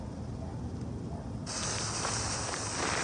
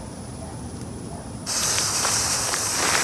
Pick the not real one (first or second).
second